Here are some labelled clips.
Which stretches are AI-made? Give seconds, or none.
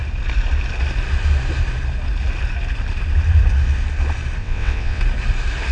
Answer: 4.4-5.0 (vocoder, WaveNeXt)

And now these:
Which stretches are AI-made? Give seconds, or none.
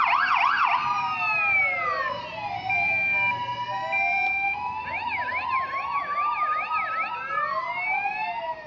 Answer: none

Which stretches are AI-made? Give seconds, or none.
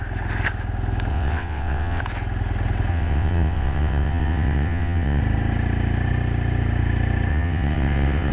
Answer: 1.1-2.0 (vocoder, WaveNeXt); 2.9-5.2; 7.3-8.3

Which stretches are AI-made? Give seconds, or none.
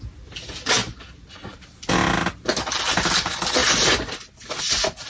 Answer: none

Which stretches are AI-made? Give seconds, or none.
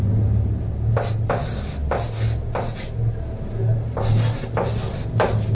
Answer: none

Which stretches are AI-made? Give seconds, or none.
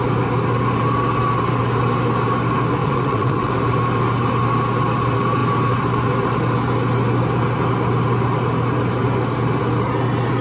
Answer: 2.8-3.5 (vocoder, WaveNeXt)